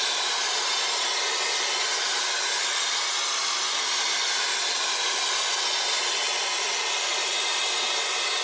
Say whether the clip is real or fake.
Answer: real